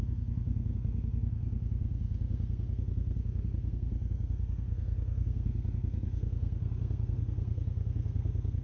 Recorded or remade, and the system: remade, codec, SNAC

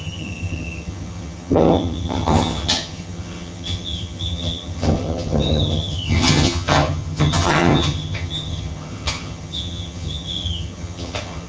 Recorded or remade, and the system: remade, vocoder, HiFi-GAN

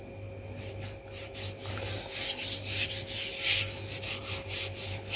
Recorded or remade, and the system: recorded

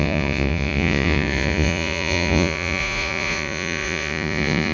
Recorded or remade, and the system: remade, vocoder, Vocos